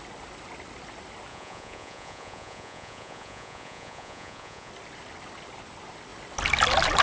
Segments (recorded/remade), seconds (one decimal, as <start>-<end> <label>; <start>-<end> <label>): 0.0-1.3 recorded; 1.3-4.7 remade; 4.7-7.0 recorded